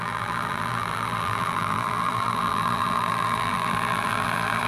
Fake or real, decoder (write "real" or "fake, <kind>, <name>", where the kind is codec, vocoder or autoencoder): fake, vocoder, BigVGAN v2